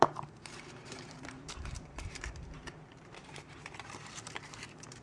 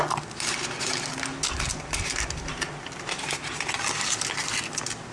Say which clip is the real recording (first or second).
second